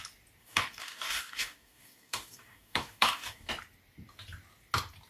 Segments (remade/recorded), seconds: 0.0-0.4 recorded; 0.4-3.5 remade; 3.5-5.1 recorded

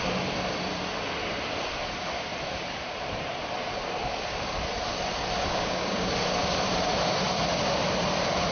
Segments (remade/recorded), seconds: 0.0-5.5 recorded; 5.5-6.2 remade; 6.2-8.5 recorded

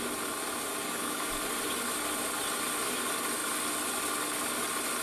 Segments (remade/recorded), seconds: 0.0-0.7 recorded; 0.7-1.4 remade; 1.4-5.0 recorded

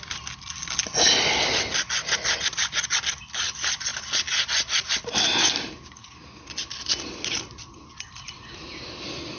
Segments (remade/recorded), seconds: 0.0-9.4 recorded

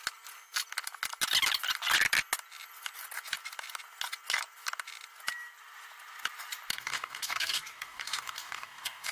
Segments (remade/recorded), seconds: 0.0-6.7 recorded; 6.7-9.1 remade

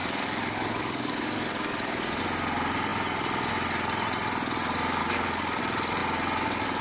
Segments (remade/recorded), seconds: 0.0-2.2 remade; 2.2-5.0 recorded; 5.0-5.6 remade; 5.6-6.8 recorded

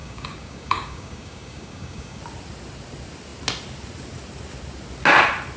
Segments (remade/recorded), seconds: 0.0-2.2 remade; 2.2-5.6 recorded

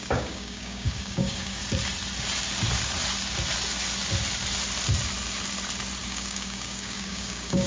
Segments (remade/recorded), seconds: 0.0-1.6 remade; 1.6-6.0 recorded; 6.0-7.7 remade